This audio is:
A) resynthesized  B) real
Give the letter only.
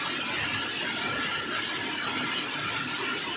B